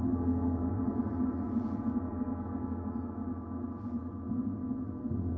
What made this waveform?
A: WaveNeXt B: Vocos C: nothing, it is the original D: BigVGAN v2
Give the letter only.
A